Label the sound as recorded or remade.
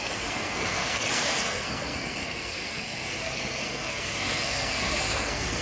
remade